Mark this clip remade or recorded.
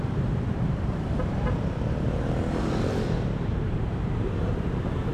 remade